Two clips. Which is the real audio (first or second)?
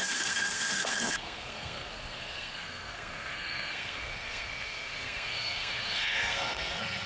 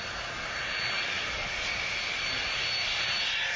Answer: second